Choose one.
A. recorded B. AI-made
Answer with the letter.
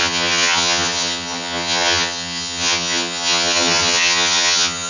B